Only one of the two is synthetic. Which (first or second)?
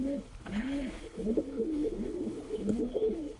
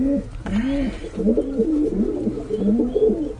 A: first